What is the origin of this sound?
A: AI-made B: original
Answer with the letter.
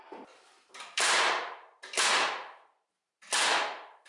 B